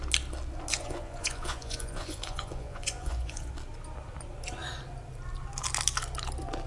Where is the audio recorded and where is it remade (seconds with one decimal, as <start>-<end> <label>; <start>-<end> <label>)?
0.0-0.7 recorded; 0.7-3.5 remade; 3.5-6.7 recorded